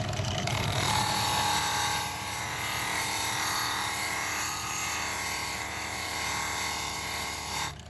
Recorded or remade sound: remade